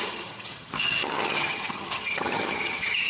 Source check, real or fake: fake